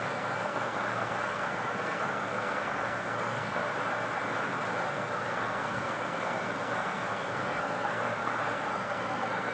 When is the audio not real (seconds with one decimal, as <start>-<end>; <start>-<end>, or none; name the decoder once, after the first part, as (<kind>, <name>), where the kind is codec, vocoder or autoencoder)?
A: 0.0-3.6 (codec, SNAC); 4.9-9.5